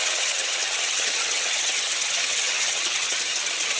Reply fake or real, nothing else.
fake